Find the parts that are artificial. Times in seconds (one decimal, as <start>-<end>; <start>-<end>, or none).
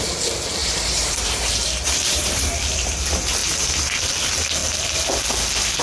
0.6-2.5; 3.4-4.0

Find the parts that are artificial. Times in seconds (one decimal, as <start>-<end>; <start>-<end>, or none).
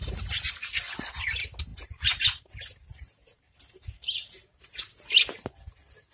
1.7-5.2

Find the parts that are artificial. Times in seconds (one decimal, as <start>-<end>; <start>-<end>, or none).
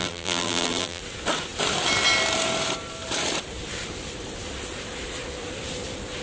0.0-1.0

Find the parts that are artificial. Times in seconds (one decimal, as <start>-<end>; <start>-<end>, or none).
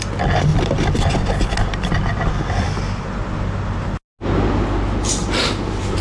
5.2-6.0